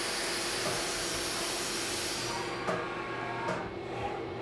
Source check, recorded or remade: recorded